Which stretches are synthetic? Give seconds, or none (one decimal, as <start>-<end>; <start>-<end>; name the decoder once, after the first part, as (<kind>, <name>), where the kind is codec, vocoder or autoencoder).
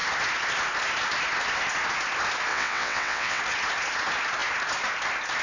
2.5-3.4 (vocoder, WaveNeXt)